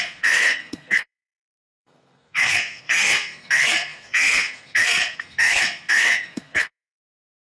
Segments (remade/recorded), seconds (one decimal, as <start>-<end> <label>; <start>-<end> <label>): 0.0-7.5 remade